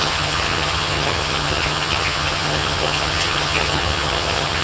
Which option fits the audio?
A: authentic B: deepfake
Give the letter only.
B